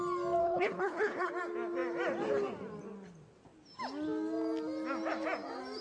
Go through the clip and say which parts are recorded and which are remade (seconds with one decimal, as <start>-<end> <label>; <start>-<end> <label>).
0.0-0.4 recorded; 0.4-1.3 remade; 1.3-5.8 recorded